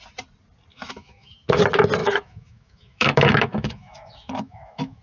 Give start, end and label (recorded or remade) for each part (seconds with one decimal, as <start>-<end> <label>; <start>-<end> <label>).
0.0-0.7 recorded; 0.7-1.6 remade; 1.6-2.0 recorded; 2.0-5.0 remade